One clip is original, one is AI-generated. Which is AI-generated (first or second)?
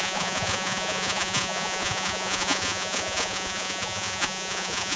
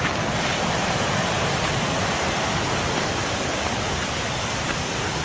first